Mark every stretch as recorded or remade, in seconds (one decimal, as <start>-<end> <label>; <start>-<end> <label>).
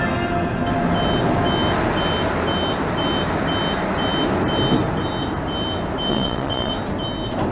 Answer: 0.0-6.1 recorded; 6.1-6.7 remade; 6.7-7.5 recorded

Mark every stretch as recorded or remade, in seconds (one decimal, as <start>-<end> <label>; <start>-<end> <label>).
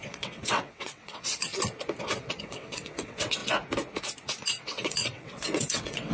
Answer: 0.0-1.5 remade; 1.5-2.2 recorded; 2.2-3.4 remade; 3.4-4.6 recorded; 4.6-6.1 remade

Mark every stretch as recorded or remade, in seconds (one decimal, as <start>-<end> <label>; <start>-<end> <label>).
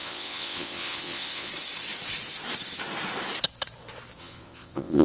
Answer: 0.0-1.5 remade; 1.5-4.2 recorded; 4.2-5.0 remade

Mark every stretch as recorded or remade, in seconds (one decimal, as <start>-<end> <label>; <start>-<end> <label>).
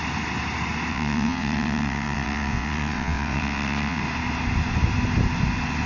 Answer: 0.0-0.9 recorded; 0.9-4.0 remade; 4.0-5.9 recorded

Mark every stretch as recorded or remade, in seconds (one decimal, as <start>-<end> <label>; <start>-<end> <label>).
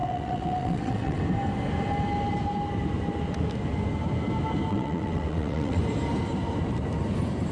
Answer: 0.0-1.2 remade; 1.2-4.7 recorded; 4.7-5.8 remade; 5.8-7.5 recorded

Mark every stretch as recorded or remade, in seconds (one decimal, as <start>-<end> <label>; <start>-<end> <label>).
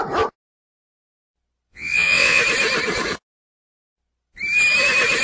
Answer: 0.0-1.7 recorded; 1.7-2.4 remade; 2.4-5.2 recorded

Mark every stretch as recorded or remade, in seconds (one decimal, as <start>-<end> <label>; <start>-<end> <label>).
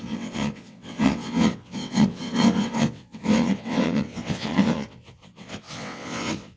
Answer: 0.0-6.6 remade